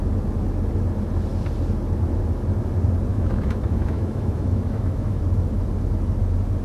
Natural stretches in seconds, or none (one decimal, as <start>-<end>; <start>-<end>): 0.0-3.1; 5.2-6.6